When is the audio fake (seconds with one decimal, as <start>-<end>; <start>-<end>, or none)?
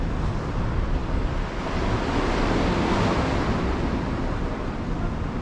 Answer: none